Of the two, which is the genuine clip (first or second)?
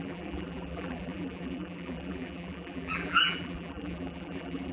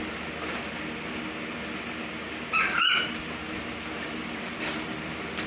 second